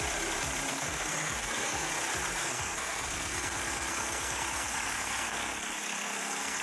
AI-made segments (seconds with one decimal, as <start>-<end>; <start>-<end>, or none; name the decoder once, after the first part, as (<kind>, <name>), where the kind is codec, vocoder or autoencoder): 0.7-1.9 (codec, SNAC); 2.3-6.6